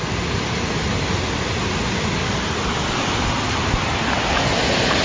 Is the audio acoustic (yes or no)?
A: yes